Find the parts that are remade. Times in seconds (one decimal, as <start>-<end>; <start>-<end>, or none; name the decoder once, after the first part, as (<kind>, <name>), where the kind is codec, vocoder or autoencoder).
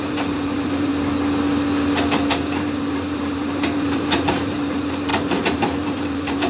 0.0-0.9 (vocoder, BigVGAN v2); 2.3-6.5